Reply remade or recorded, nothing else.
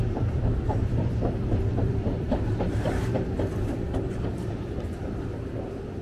remade